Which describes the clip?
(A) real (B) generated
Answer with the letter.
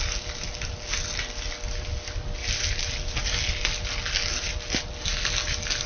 A